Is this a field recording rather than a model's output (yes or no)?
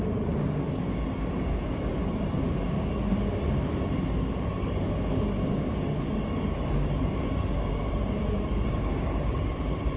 no